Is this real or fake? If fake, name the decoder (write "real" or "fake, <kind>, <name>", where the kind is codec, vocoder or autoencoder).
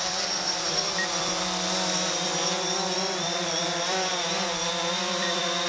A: fake, vocoder, BigVGAN v2